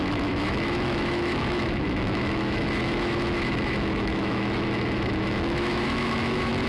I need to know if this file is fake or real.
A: fake